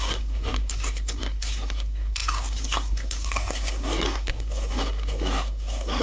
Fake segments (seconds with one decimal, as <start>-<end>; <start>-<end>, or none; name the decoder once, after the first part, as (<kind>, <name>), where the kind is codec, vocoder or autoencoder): 0.0-6.0 (codec, SNAC)